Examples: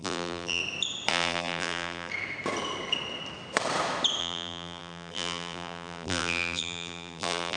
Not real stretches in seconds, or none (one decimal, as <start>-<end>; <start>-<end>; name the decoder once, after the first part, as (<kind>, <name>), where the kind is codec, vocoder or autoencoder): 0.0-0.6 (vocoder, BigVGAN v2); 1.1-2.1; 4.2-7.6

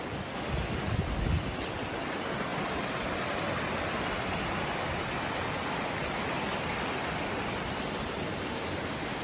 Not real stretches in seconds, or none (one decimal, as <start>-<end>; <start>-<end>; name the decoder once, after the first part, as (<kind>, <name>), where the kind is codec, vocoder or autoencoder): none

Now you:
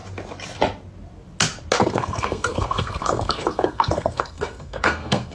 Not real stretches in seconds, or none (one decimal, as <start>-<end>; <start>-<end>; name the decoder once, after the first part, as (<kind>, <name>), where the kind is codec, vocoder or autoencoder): 1.8-5.3 (codec, SNAC)

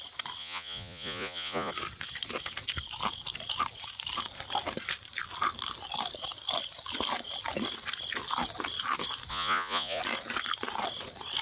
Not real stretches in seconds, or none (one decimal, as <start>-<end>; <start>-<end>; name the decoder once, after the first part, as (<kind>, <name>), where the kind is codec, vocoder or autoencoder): 0.4-1.7 (vocoder, Vocos); 9.3-10.0